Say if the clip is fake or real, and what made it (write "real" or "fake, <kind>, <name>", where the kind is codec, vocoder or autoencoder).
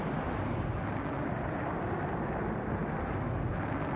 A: real